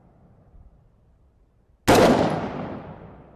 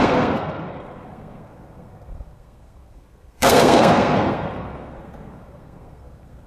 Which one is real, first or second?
first